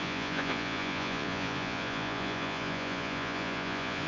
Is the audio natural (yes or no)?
no